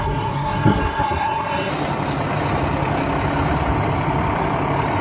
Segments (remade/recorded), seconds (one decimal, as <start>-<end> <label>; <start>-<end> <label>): 0.0-1.7 remade; 1.7-5.0 recorded